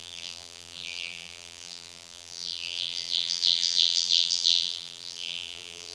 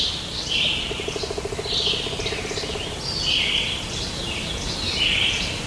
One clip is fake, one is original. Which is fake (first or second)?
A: first